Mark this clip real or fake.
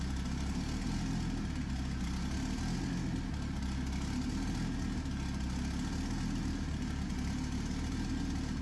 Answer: real